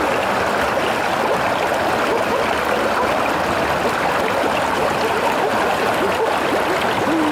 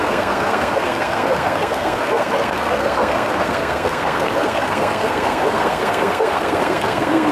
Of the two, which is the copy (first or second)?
second